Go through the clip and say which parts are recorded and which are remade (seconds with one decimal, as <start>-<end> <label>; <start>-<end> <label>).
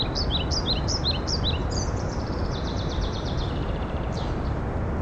0.0-1.6 recorded; 1.6-4.6 remade; 4.6-5.0 recorded